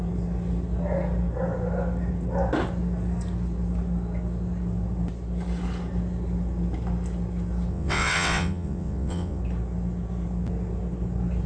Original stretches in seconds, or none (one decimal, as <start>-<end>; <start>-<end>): 0.0-7.7; 9.4-11.5